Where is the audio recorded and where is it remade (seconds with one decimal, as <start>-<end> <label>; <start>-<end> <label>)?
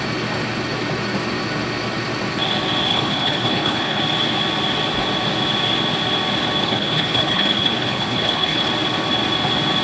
0.0-2.9 recorded; 2.9-4.0 remade; 4.0-6.6 recorded; 6.6-8.7 remade; 8.7-9.8 recorded